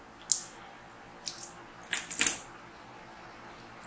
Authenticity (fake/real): real